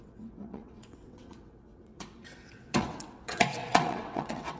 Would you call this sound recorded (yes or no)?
no